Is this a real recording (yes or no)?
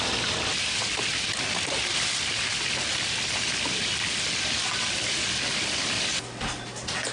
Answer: yes